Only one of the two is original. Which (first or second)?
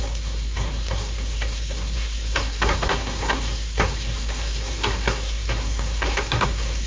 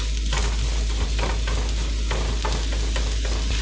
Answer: second